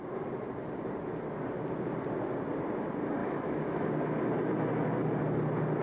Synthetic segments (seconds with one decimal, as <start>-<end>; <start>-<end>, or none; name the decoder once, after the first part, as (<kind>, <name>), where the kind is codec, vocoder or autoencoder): 3.2-3.9 (autoencoder, DAC-VAE)